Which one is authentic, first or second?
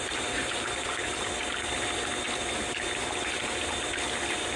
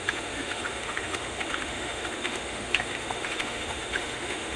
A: first